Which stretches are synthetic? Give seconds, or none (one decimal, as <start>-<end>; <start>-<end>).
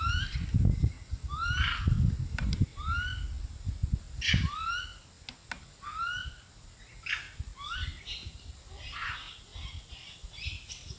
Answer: none